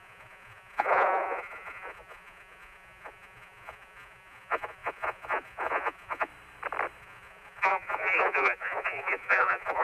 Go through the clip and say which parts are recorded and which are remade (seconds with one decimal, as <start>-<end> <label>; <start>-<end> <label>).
0.0-6.3 remade; 6.3-7.0 recorded; 7.0-9.8 remade